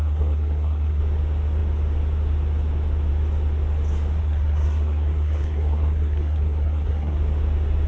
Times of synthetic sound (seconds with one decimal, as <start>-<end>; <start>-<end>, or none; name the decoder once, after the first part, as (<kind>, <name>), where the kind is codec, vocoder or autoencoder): 0.0-1.0 (codec, SNAC); 4.2-7.2